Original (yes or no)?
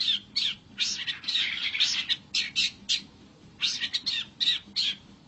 yes